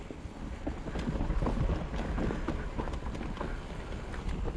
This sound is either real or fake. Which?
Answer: real